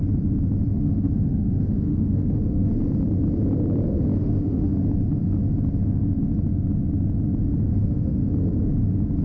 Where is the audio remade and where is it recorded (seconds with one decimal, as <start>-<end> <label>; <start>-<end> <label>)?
0.0-0.7 recorded; 0.7-2.7 remade; 2.7-4.2 recorded; 4.2-4.7 remade; 4.7-7.7 recorded; 7.7-8.2 remade; 8.2-9.2 recorded